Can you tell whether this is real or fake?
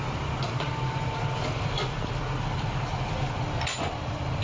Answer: real